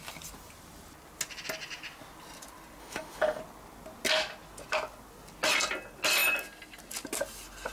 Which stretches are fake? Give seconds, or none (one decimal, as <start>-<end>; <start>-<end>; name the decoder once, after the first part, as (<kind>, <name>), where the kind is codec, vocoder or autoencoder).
2.8-3.4 (autoencoder, DAC-VAE)